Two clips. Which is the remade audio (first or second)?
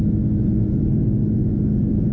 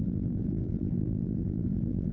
second